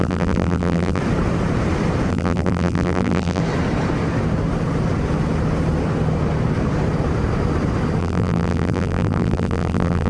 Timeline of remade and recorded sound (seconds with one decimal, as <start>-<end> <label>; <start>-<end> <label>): 0.0-1.0 remade; 1.0-2.1 recorded; 2.1-3.4 remade; 3.4-8.0 recorded; 8.0-10.1 remade